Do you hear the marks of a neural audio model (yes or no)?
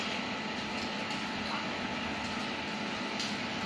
no